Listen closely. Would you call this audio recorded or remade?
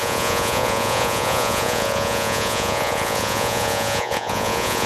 remade